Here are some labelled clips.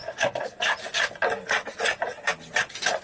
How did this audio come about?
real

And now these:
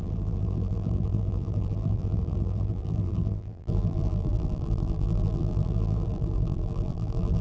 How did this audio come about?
fake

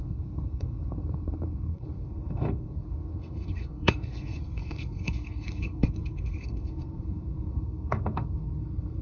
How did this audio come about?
fake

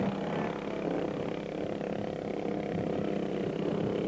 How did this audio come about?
real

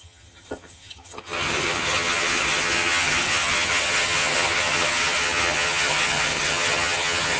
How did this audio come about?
fake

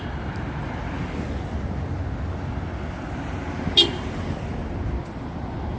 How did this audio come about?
real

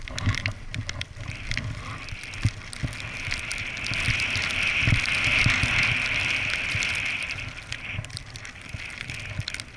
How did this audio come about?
real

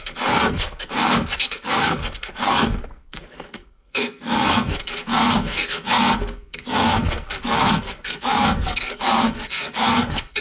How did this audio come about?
fake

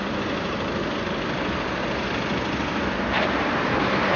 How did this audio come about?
real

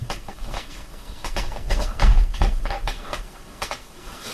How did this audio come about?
fake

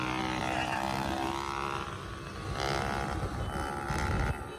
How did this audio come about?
real